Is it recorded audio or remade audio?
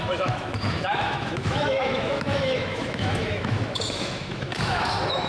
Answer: remade